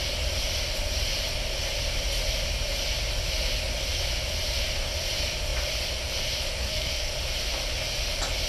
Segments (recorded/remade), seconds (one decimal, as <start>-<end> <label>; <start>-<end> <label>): 0.0-6.6 recorded; 6.6-7.1 remade; 7.1-8.5 recorded